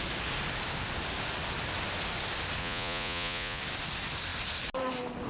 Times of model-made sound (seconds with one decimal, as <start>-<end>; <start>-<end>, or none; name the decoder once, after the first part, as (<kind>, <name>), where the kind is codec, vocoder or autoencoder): 2.6-3.6 (vocoder, Vocos)